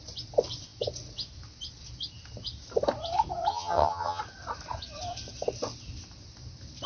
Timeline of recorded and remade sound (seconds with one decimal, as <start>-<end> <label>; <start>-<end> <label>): 0.0-3.5 recorded; 3.5-4.2 remade; 4.2-6.9 recorded